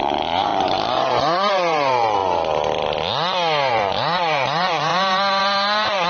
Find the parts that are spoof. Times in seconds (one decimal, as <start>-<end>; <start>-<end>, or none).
0.0-2.2; 3.7-6.1